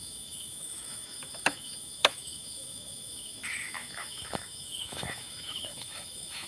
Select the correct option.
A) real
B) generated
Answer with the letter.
B